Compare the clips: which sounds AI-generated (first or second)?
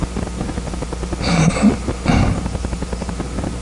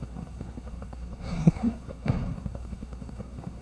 second